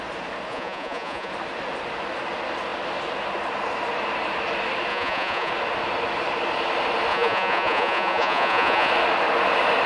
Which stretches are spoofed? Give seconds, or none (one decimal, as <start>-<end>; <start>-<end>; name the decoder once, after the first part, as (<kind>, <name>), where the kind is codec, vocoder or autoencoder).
0.5-1.3 (vocoder, Vocos); 4.9-5.5; 7.1-8.9